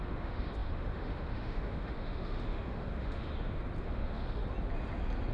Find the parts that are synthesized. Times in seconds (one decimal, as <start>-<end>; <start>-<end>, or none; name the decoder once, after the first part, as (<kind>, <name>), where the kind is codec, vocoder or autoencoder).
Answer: 0.0-3.3 (autoencoder, DAC-VAE); 3.8-4.4